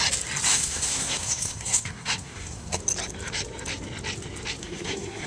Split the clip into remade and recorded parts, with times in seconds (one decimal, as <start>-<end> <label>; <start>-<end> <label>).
0.0-0.5 recorded; 0.5-2.8 remade; 2.8-4.6 recorded; 4.6-5.3 remade